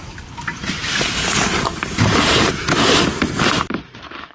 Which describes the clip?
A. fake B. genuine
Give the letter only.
A